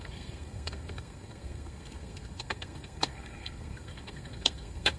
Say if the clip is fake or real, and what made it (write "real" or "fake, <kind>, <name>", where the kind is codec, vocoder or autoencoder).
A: fake, codec, SNAC